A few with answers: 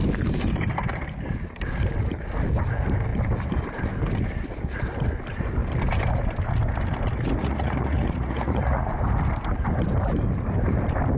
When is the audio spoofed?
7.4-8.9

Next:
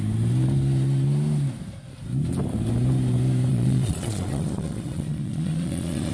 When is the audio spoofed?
3.5-6.1